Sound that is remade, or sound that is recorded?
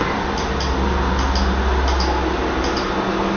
recorded